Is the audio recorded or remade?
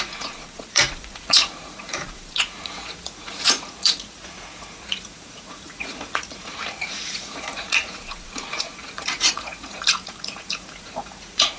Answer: remade